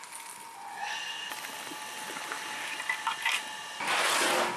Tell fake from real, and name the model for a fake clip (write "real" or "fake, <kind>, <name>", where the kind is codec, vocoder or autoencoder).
real